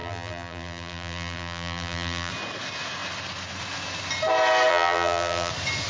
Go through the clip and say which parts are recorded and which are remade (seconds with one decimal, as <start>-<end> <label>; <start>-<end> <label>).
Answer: 0.0-2.3 remade; 2.3-4.7 recorded; 4.7-5.5 remade; 5.5-5.9 recorded